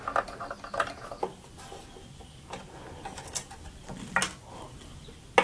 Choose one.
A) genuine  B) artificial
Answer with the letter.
A